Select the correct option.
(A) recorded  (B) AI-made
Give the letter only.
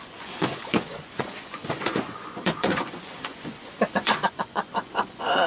B